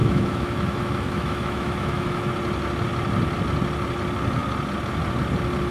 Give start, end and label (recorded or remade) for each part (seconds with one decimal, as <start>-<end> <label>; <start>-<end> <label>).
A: 0.0-2.3 remade; 2.3-5.7 recorded